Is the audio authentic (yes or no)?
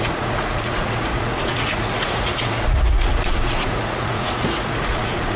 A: no